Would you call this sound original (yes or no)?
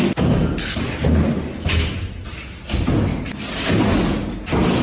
yes